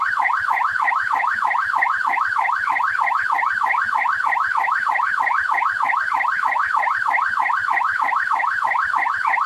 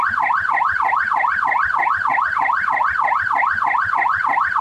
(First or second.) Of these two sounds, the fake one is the first